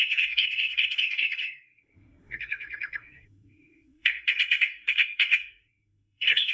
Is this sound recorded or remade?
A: remade